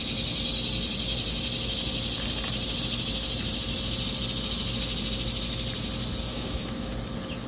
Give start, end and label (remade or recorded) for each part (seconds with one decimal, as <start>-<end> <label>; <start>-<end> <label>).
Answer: 0.0-6.3 recorded; 6.3-7.0 remade; 7.0-7.5 recorded